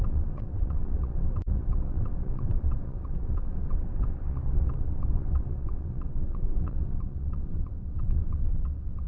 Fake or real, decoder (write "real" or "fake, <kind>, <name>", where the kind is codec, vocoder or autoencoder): fake, vocoder, WaveNeXt